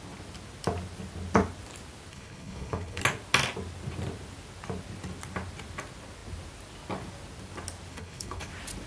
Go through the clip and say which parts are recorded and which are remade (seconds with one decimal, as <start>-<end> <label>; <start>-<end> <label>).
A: 0.0-2.1 recorded; 2.1-3.0 remade; 3.0-7.9 recorded; 7.9-8.5 remade; 8.5-8.9 recorded